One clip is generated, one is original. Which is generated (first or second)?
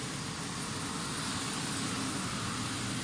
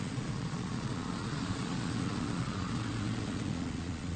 second